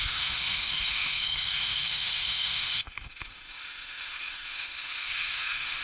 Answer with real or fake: fake